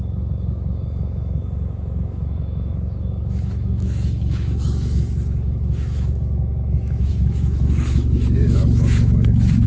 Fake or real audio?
fake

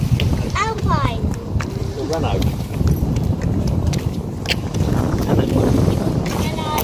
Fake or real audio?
real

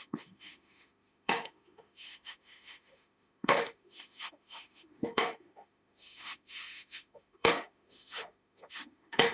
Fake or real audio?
fake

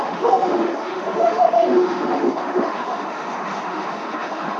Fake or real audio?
fake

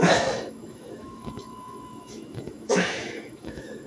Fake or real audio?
fake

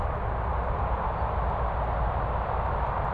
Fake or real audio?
real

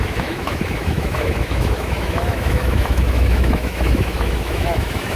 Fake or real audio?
fake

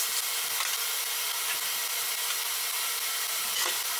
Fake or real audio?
real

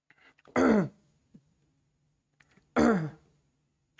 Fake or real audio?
real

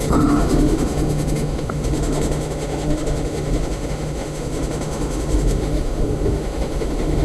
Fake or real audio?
fake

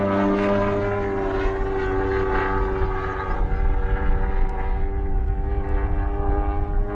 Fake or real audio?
real